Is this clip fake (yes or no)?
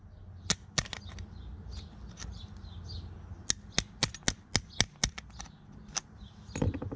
no